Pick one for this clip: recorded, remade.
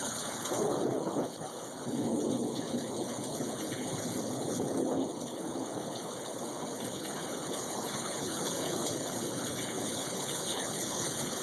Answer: remade